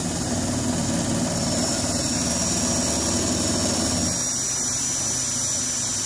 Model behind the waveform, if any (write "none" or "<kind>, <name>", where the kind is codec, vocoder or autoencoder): none